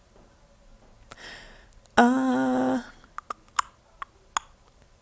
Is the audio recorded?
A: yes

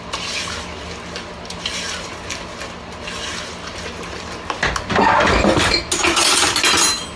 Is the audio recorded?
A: yes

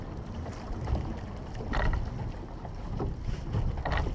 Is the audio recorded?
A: yes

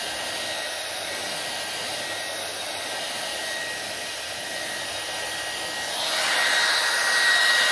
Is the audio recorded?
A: yes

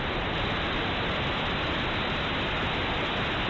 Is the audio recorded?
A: yes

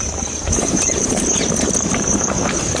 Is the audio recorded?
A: no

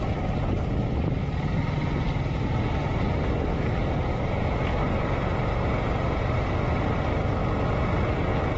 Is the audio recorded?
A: yes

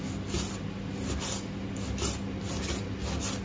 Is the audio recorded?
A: yes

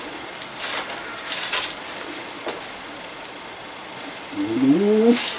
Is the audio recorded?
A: yes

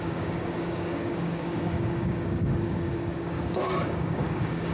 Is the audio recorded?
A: no